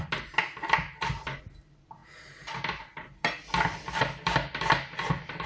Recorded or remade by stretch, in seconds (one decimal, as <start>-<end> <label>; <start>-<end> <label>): 0.0-5.5 recorded